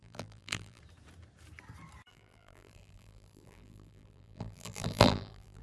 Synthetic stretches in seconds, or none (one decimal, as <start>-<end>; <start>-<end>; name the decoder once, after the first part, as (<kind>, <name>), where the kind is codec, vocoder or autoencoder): 0.0-0.8 (vocoder, BigVGAN v2); 2.1-5.6